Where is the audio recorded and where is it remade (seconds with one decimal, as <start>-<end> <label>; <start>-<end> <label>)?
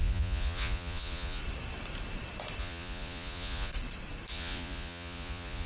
0.0-1.4 remade; 1.4-2.6 recorded; 2.6-3.7 remade; 3.7-4.3 recorded; 4.3-5.7 remade